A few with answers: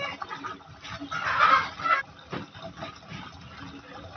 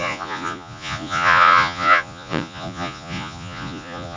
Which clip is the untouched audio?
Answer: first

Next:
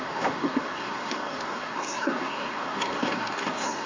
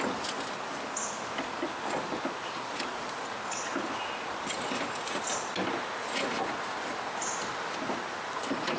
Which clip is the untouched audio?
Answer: second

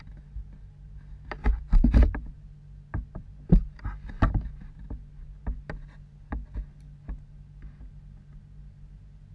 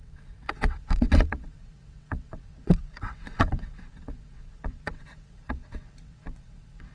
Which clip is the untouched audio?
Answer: first